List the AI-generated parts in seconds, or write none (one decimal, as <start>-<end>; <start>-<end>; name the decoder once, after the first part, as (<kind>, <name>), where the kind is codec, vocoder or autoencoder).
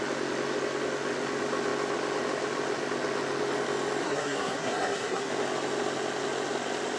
4.0-5.3 (codec, SNAC)